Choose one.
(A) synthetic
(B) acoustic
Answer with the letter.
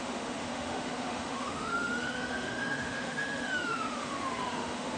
A